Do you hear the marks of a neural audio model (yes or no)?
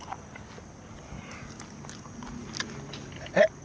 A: no